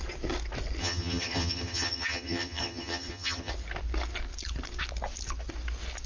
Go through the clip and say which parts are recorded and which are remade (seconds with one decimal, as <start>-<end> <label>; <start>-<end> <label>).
0.0-0.8 recorded; 0.8-3.5 remade; 3.5-6.1 recorded